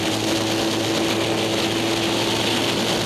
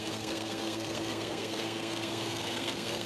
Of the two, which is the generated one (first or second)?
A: second